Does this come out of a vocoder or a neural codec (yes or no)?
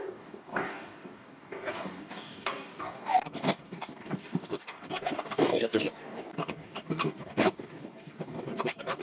yes